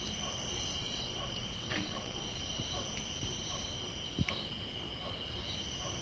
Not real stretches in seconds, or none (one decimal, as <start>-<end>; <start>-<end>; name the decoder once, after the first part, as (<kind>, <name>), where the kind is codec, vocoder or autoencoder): 0.8-2.2 (vocoder, WaveNeXt)

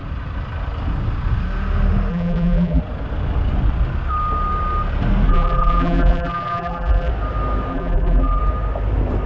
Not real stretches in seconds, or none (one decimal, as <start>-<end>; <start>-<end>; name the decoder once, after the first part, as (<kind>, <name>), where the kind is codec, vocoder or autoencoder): 2.1-2.8 (vocoder, BigVGAN v2); 5.3-7.1; 7.7-8.4

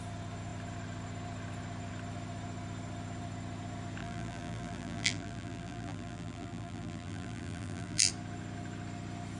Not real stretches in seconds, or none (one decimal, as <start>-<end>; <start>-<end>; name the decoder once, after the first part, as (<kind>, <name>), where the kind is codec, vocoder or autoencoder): 4.0-8.1 (vocoder, BigVGAN v2)

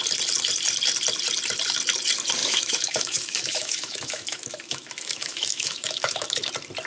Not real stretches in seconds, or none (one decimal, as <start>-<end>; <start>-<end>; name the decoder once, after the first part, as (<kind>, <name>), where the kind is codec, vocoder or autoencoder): 2.4-6.5 (autoencoder, DAC-VAE)

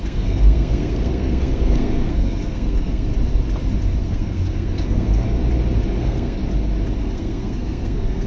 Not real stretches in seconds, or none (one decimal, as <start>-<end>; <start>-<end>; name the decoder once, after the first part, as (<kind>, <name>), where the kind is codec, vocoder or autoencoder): 0.0-3.1 (codec, SNAC); 4.0-5.4; 6.0-6.4; 7.0-8.3

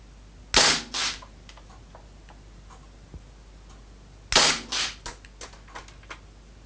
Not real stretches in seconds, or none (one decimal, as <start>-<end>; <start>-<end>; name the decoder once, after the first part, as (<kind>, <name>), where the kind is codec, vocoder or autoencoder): none

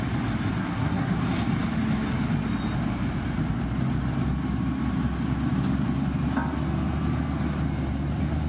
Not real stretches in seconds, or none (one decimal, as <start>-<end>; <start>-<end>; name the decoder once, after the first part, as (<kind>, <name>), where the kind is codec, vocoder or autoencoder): 0.6-1.1 (codec, SNAC)